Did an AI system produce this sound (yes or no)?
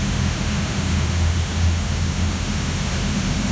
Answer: yes